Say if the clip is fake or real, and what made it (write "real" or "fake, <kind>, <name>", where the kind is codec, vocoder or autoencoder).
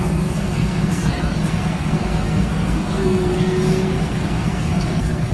fake, codec, SNAC